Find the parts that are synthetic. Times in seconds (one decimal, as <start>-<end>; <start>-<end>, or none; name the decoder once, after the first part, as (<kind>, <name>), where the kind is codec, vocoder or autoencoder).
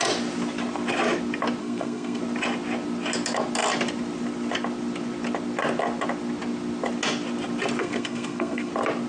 1.6-2.2 (codec, SNAC); 7.8-8.7